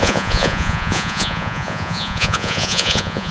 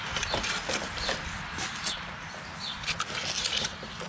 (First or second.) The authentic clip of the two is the second